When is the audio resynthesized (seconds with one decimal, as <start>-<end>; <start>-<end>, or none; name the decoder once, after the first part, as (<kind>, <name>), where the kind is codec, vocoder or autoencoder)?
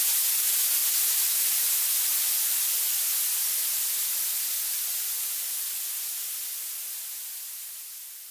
none